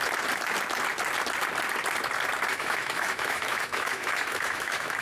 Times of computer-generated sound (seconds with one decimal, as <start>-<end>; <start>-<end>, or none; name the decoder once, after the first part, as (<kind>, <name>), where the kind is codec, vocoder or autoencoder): 2.5-5.0 (autoencoder, DAC-VAE)